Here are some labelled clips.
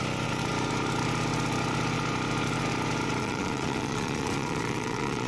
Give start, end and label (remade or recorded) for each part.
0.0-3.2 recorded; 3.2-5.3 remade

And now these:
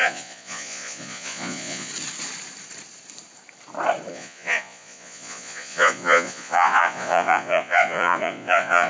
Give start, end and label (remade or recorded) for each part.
0.0-1.9 remade; 1.9-4.1 recorded; 4.1-8.9 remade